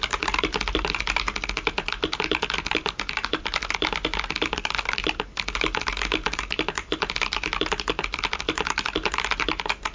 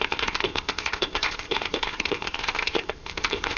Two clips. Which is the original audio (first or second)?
first